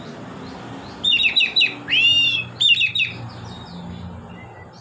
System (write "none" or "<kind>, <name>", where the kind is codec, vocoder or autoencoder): none